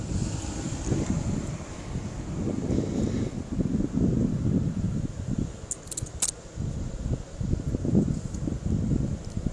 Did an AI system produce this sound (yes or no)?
no